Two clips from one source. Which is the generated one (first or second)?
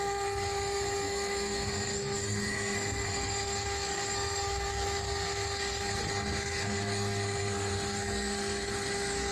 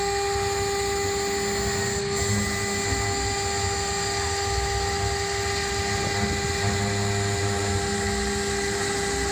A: first